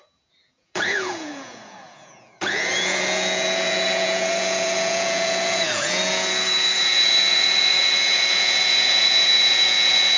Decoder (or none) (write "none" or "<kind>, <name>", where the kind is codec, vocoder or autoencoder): vocoder, Vocos